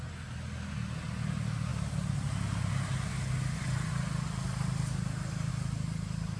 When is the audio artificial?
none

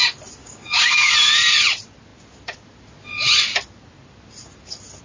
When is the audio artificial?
0.4-1.1 (codec, DAC)

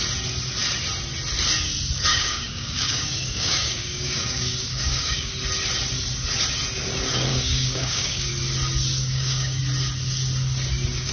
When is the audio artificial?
2.1-5.3 (codec, DAC); 7.3-8.3; 9.1-9.6